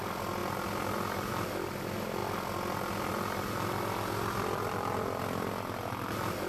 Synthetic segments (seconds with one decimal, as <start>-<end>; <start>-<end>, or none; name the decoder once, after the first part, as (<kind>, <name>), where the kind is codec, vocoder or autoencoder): none